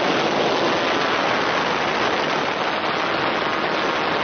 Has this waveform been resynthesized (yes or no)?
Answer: no